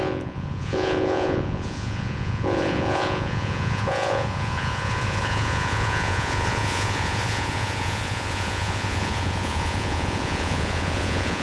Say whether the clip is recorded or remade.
remade